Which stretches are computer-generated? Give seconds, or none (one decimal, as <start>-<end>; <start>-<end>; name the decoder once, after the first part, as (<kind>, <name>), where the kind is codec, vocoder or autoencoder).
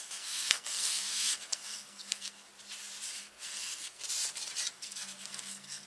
0.0-2.5 (codec, SNAC); 3.2-4.0; 4.7-5.9